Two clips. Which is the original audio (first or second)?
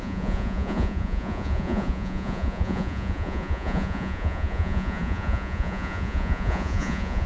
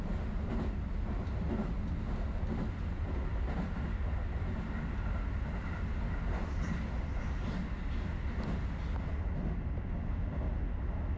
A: second